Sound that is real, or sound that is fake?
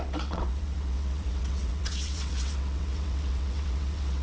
fake